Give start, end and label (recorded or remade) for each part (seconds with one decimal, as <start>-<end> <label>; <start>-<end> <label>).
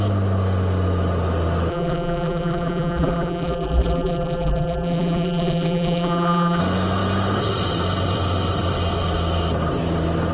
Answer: 0.0-1.7 recorded; 1.7-6.6 remade; 6.6-10.3 recorded